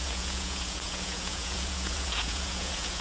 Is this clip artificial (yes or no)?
yes